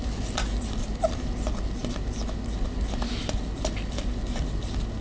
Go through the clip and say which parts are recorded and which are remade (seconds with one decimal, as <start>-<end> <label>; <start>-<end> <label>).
0.0-5.0 recorded